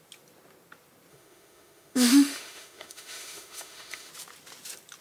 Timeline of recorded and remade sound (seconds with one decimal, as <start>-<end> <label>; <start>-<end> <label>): 0.0-1.1 recorded; 1.1-4.1 remade; 4.1-5.0 recorded